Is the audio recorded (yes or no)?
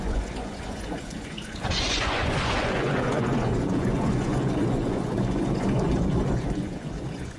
no